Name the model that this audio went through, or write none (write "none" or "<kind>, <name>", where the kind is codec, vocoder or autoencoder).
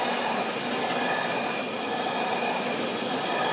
none